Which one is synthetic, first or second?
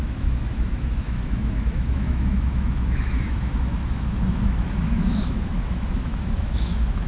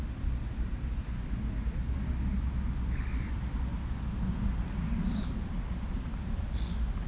first